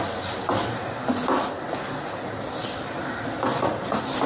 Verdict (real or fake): real